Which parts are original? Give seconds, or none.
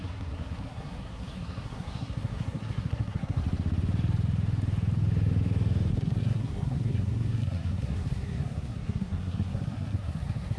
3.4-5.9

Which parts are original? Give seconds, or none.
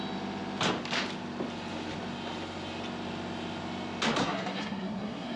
0.0-4.2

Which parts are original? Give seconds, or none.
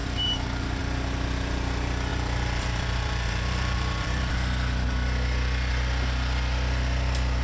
0.8-2.1; 4.3-7.4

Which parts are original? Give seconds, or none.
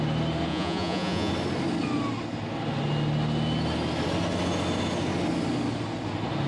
0.0-0.5; 1.3-6.5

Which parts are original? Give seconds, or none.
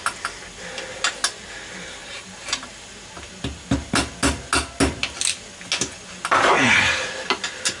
0.0-2.0; 3.3-7.8